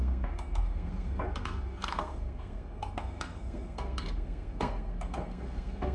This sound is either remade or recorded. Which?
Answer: remade